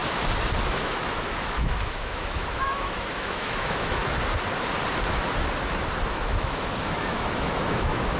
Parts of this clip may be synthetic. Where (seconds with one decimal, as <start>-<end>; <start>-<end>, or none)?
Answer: 0.6-4.0; 6.1-8.2